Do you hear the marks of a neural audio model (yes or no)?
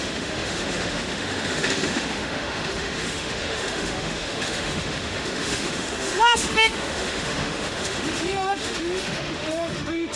yes